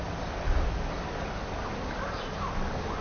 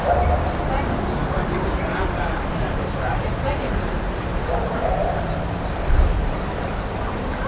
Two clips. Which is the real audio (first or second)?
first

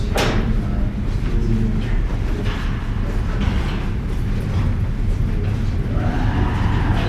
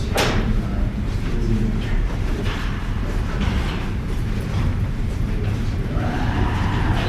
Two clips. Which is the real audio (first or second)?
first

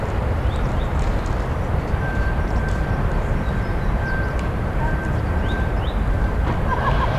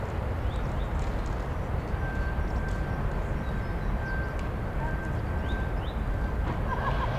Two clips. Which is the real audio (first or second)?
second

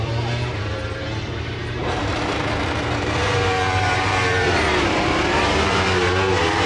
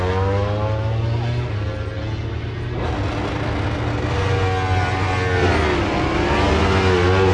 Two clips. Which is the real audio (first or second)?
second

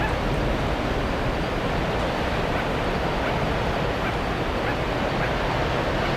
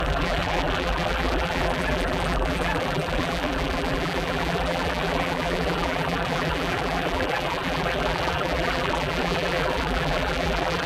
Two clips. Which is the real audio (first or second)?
first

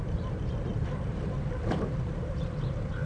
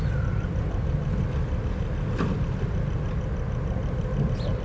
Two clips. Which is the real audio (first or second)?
second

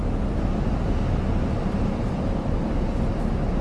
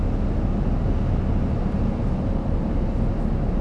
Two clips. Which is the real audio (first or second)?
second